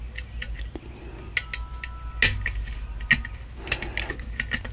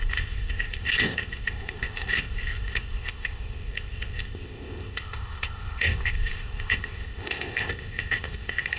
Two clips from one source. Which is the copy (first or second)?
second